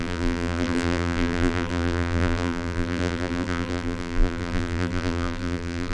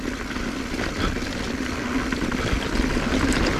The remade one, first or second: first